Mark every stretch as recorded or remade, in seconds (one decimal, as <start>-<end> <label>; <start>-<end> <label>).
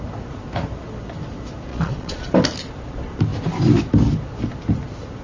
0.0-1.7 recorded; 1.7-2.3 remade; 2.3-5.2 recorded